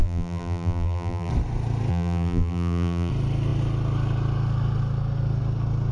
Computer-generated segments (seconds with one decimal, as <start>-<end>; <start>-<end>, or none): 0.0-1.3; 1.9-3.1